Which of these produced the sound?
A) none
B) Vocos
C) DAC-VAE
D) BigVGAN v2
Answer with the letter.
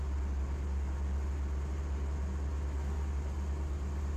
A